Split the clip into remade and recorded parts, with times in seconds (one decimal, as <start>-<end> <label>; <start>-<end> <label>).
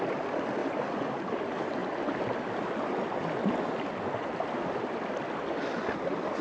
0.0-6.4 recorded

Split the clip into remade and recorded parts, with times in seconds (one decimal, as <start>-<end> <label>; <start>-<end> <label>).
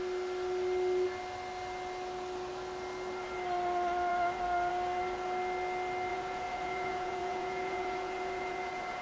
0.0-6.1 recorded; 6.1-9.0 remade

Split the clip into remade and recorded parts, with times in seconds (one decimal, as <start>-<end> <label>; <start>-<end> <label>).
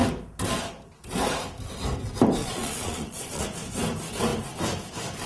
0.0-2.4 recorded; 2.4-3.4 remade; 3.4-5.3 recorded